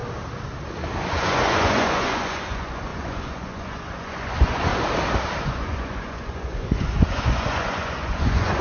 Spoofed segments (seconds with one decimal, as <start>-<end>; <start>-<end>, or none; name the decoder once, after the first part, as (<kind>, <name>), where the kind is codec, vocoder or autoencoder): 1.1-4.7 (vocoder, Vocos); 5.4-8.6

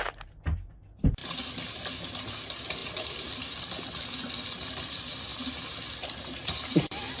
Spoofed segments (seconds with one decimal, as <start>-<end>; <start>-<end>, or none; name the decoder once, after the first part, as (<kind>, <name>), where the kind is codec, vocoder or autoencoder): none

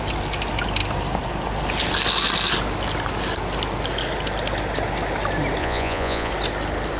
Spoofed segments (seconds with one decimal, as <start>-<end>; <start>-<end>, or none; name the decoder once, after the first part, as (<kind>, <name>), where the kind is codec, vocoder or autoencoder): 5.6-6.3 (vocoder, Vocos)

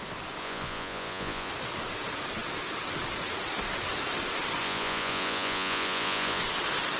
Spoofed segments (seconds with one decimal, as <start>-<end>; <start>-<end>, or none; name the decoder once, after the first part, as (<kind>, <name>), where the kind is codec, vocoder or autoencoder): 0.4-1.5 (vocoder, Vocos); 4.6-6.4